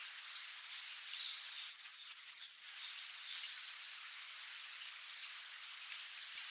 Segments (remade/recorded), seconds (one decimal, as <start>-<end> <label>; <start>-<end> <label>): 0.0-3.3 remade; 3.3-4.7 recorded; 4.7-5.2 remade; 5.2-6.0 recorded; 6.0-6.5 remade